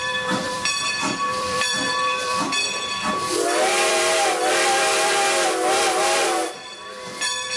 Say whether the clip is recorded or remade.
remade